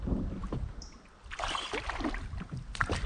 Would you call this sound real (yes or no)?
yes